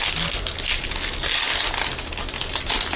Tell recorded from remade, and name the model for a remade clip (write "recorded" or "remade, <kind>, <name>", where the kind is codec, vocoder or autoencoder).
recorded